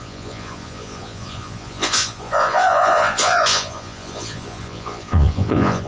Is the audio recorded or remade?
remade